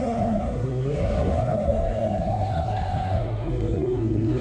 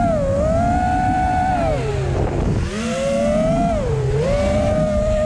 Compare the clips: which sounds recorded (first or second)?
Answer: second